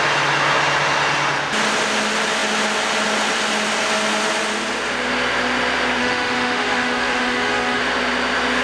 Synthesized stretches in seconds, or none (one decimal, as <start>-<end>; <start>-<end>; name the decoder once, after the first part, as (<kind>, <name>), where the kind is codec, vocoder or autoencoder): 6.0-7.8 (autoencoder, DAC-VAE)